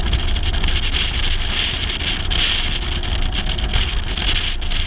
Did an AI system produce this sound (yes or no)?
no